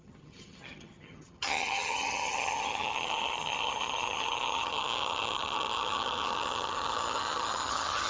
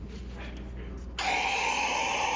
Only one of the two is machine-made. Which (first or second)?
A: first